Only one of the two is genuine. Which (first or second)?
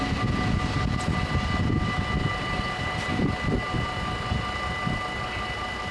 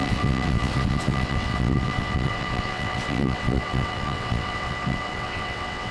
first